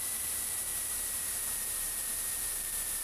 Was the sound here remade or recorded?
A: remade